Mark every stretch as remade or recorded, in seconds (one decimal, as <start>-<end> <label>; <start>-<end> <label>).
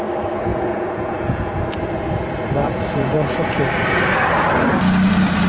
0.0-0.5 recorded; 0.5-1.6 remade; 1.6-2.6 recorded; 2.6-3.6 remade; 3.6-5.5 recorded